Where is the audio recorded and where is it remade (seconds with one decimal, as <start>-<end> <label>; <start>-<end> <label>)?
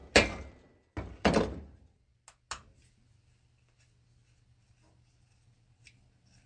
0.0-6.5 recorded